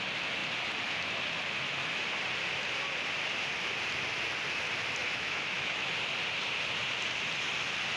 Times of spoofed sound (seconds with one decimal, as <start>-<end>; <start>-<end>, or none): 5.0-5.9

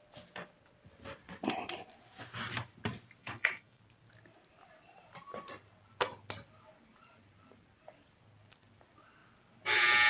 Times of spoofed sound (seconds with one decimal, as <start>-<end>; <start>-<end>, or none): 3.2-3.8

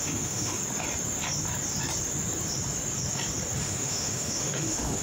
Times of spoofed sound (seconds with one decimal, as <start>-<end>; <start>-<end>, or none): 0.0-0.6; 3.6-5.0

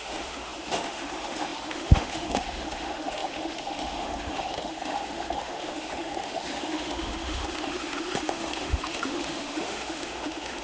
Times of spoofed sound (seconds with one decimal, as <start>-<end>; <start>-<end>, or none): 0.0-10.6

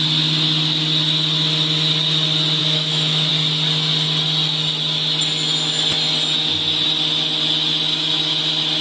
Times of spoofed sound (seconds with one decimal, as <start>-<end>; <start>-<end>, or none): 2.6-3.3